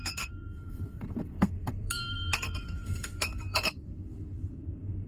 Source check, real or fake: fake